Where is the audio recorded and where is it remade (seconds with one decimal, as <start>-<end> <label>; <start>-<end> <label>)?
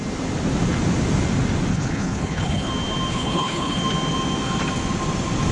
0.0-1.7 recorded; 1.7-2.7 remade; 2.7-3.1 recorded; 3.1-3.8 remade; 3.8-5.5 recorded